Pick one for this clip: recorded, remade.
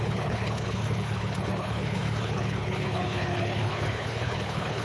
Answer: remade